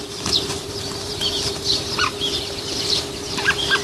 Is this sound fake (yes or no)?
yes